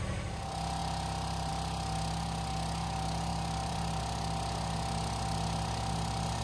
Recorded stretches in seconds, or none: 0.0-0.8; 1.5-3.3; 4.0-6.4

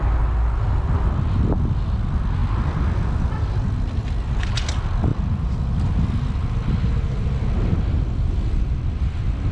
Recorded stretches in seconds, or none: 0.0-2.4; 4.0-5.1; 5.8-9.5

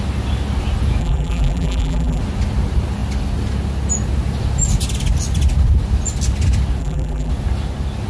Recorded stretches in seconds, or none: 0.0-1.0; 2.2-6.8; 7.3-8.1

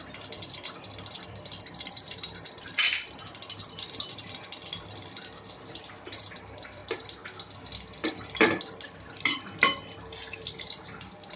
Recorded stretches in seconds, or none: 6.8-8.8